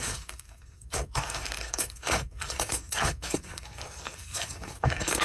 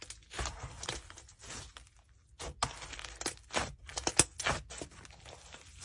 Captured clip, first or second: second